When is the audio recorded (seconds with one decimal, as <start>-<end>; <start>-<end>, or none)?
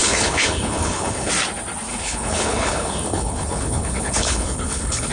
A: 1.3-1.9